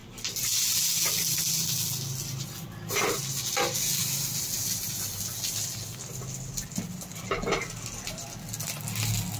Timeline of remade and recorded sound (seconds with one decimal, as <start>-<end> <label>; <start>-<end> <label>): 0.0-9.4 recorded